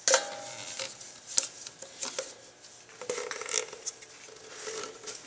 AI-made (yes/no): no